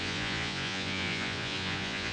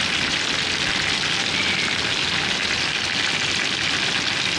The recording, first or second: second